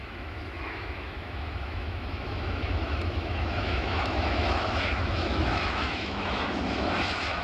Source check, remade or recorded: remade